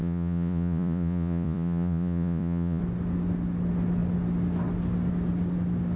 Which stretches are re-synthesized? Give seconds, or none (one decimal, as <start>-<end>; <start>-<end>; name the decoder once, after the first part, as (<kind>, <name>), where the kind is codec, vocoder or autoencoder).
0.0-2.8 (vocoder, Vocos)